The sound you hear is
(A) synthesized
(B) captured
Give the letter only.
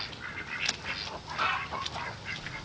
B